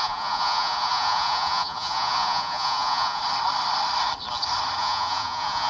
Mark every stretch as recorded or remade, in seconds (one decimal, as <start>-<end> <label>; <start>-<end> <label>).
0.0-3.2 remade; 3.2-4.8 recorded; 4.8-5.7 remade